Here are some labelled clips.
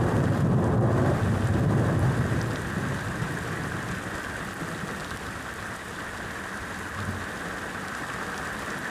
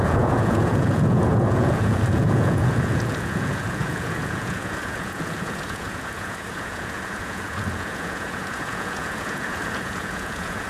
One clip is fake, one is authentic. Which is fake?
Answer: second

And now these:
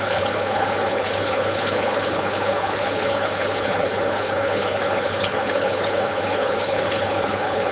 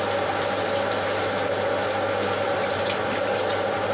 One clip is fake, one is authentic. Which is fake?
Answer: first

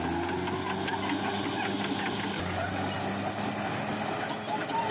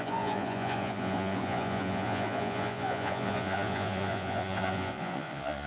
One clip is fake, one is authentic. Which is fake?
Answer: second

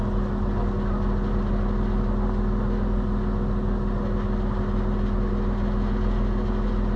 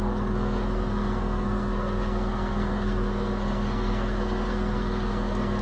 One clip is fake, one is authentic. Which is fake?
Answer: second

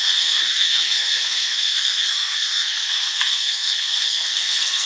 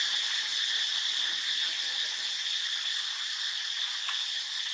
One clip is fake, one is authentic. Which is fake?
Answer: first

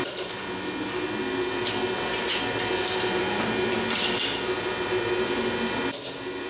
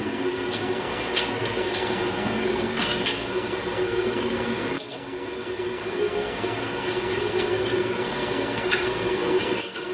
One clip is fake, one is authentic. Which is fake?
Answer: second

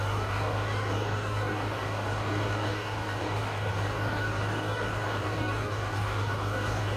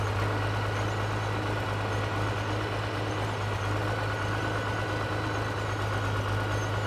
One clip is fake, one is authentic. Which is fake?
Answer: first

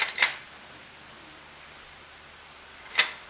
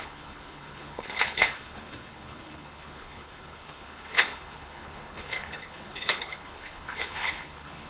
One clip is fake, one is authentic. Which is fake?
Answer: second